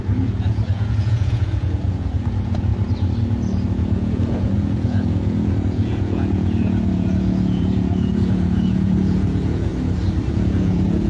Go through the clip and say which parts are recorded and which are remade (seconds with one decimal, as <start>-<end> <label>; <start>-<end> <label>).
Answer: 0.0-2.7 remade; 2.7-3.7 recorded; 3.7-9.7 remade; 9.7-10.3 recorded; 10.3-11.1 remade